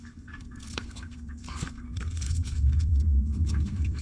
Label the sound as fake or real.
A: fake